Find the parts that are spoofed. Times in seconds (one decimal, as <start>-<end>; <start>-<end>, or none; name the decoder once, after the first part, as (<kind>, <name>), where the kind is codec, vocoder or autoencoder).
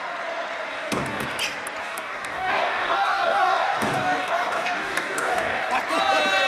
0.7-1.4 (codec, DAC); 1.8-5.7